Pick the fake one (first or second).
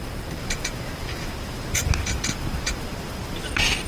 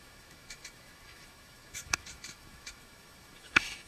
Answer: second